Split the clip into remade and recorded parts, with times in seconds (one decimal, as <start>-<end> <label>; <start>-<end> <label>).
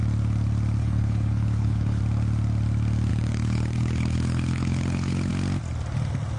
0.0-0.8 recorded; 0.8-2.0 remade; 2.0-3.1 recorded; 3.1-5.3 remade; 5.3-6.4 recorded